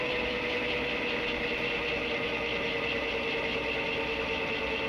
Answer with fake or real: real